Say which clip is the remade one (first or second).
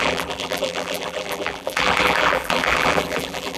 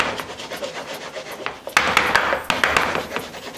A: first